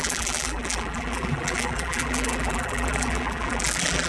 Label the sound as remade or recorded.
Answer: remade